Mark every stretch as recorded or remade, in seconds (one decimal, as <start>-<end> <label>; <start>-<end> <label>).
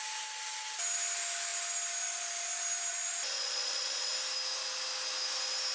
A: 0.0-2.9 recorded; 2.9-4.1 remade; 4.1-5.7 recorded